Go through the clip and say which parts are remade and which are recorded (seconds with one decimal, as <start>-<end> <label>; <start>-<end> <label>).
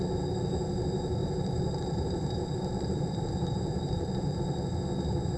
0.0-1.2 recorded; 1.2-4.4 remade; 4.4-5.4 recorded